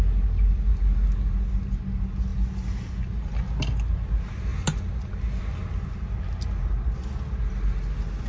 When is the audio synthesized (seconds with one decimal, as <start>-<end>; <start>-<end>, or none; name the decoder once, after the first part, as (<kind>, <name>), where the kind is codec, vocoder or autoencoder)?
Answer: none